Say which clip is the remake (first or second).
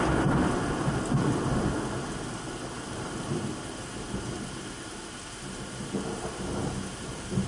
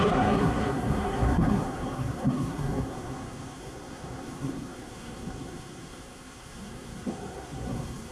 second